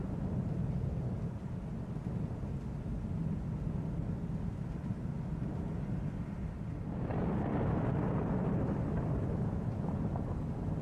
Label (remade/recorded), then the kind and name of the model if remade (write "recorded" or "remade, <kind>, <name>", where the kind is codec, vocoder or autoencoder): recorded